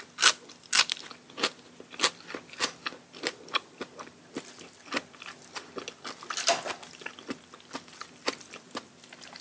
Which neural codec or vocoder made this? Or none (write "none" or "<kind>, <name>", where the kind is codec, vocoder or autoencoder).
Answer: none